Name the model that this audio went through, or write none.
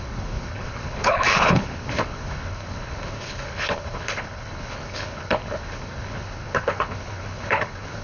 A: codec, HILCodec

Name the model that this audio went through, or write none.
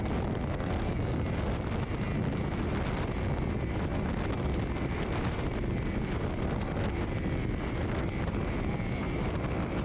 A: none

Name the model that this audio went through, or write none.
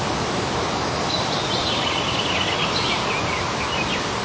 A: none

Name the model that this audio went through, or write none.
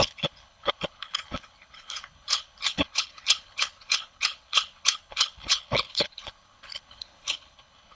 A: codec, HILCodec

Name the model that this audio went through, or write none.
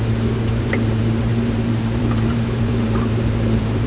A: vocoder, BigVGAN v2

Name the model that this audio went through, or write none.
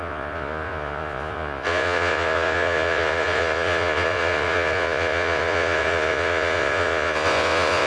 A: vocoder, Vocos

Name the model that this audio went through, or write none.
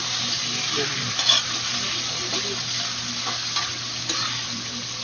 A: vocoder, BigVGAN v2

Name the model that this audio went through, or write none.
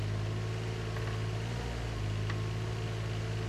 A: none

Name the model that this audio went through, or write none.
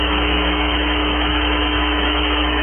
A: autoencoder, DAC-VAE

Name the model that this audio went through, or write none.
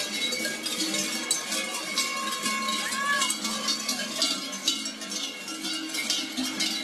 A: none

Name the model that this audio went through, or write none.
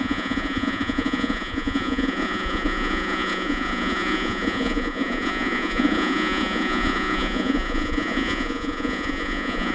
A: vocoder, Vocos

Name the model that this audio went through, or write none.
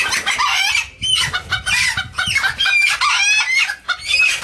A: none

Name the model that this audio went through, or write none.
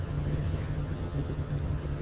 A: vocoder, HiFi-GAN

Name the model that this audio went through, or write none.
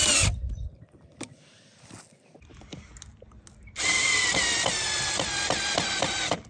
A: none